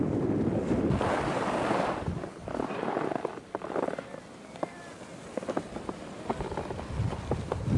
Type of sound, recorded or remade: recorded